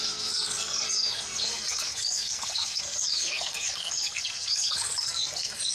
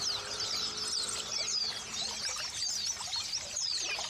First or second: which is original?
second